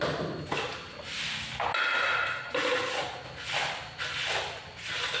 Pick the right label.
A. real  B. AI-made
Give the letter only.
A